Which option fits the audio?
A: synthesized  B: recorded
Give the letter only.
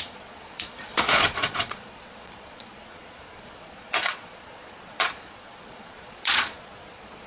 A